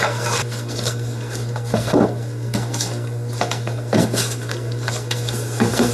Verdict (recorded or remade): remade